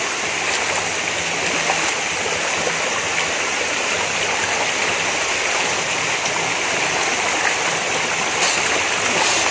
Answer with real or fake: real